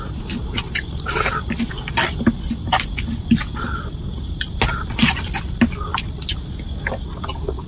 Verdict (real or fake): real